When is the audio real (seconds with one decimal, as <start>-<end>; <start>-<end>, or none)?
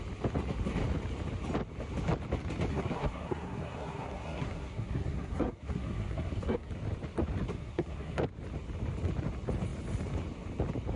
0.0-2.7; 6.7-7.5; 8.2-11.0